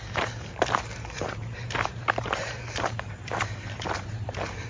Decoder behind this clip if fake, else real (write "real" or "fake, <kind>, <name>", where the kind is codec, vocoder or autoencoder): fake, vocoder, BigVGAN v2